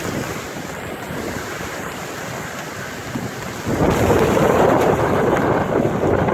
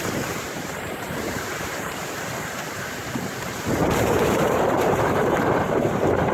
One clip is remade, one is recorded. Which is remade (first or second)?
second